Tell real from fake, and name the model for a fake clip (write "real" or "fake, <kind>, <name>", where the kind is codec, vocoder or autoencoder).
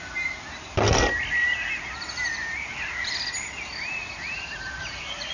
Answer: real